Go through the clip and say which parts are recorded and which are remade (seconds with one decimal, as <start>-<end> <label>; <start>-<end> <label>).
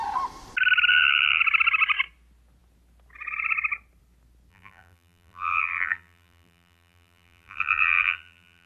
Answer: 0.0-0.9 recorded; 0.9-1.4 remade; 1.4-4.5 recorded; 4.5-8.7 remade